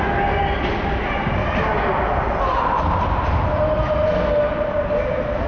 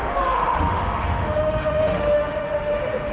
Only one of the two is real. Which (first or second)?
first